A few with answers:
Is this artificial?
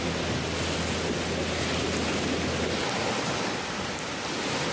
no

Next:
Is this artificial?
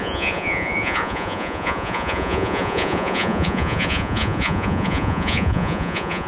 yes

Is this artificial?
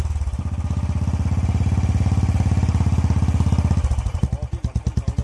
no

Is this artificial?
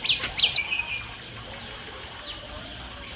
no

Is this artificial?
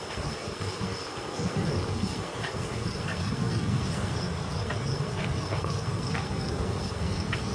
yes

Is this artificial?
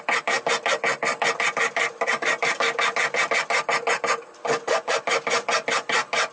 no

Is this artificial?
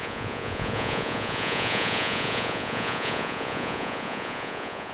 yes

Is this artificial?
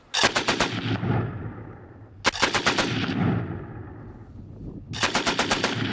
no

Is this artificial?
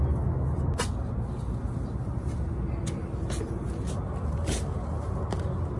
no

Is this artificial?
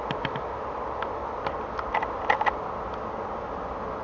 no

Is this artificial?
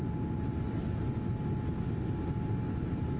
no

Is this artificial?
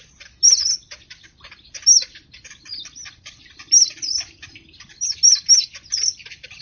no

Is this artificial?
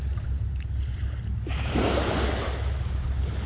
no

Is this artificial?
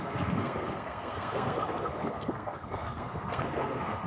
yes